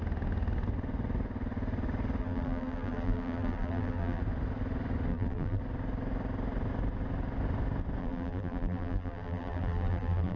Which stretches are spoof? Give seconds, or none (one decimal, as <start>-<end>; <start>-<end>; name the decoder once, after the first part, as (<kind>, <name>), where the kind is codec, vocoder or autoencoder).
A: 2.2-4.2 (vocoder, BigVGAN v2); 5.1-5.6; 8.0-10.4